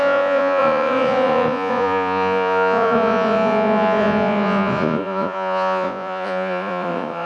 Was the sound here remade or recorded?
remade